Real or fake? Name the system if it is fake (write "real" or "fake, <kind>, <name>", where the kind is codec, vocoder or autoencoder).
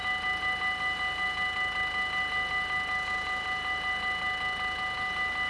real